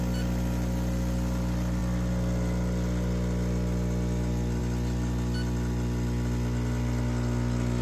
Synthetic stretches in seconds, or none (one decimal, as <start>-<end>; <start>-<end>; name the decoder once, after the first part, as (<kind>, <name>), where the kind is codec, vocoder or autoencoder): none